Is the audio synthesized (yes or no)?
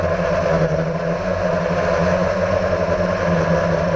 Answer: no